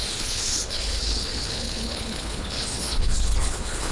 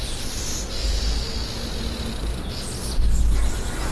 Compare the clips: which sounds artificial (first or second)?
first